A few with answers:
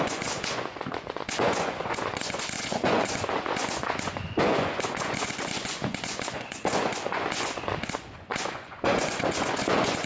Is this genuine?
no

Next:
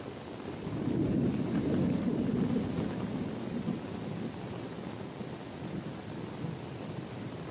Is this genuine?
yes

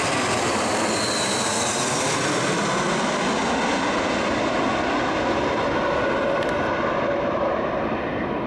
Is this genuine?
yes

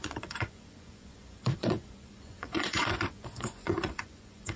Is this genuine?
no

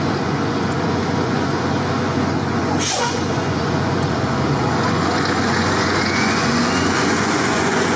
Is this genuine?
no